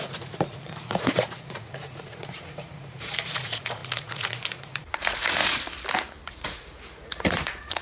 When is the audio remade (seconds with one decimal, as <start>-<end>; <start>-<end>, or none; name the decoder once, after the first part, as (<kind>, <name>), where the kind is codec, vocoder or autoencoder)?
0.0-5.4 (vocoder, Vocos); 6.3-7.8

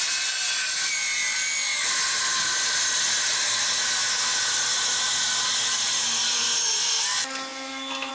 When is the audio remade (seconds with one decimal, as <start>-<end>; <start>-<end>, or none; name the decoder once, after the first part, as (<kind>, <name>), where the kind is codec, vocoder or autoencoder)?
none

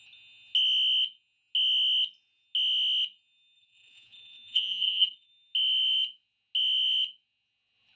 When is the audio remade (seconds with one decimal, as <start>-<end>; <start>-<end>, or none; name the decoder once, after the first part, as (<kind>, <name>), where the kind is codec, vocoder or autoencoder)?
3.6-5.3 (vocoder, Vocos)